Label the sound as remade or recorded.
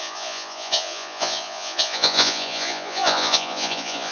remade